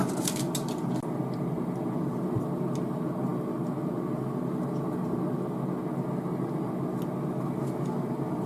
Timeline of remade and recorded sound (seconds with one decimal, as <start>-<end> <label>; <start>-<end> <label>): 0.0-8.5 recorded